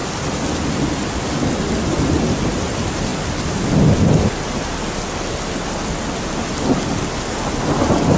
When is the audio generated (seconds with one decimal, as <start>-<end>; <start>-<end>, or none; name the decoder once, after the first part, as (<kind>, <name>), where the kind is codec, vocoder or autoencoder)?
none